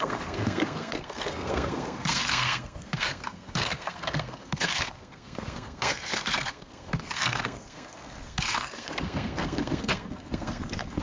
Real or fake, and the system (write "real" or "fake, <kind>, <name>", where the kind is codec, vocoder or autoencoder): fake, codec, SNAC